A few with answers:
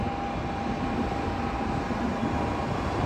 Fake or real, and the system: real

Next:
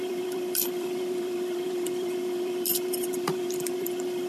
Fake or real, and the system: fake, vocoder, BigVGAN v2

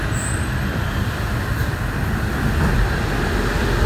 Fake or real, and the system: real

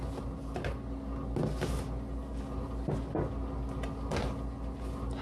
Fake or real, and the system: real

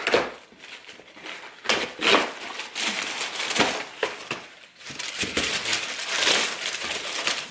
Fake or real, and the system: real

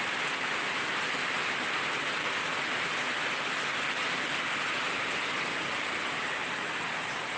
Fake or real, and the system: real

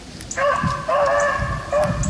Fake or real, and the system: real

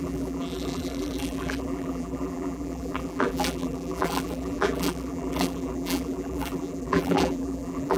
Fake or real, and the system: fake, vocoder, BigVGAN v2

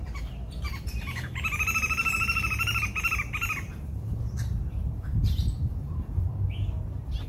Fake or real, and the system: fake, vocoder, BigVGAN v2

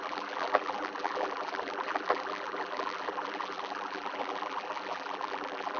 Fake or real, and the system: fake, vocoder, BigVGAN v2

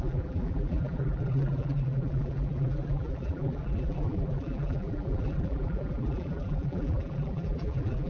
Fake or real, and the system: fake, vocoder, BigVGAN v2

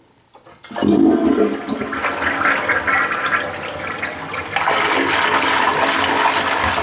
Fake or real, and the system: real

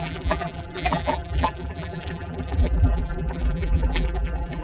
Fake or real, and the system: fake, vocoder, BigVGAN v2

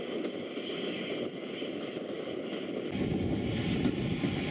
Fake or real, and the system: real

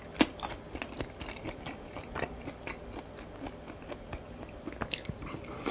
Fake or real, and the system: real